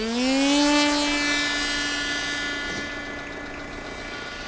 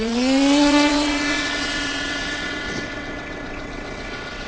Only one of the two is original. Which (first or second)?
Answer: first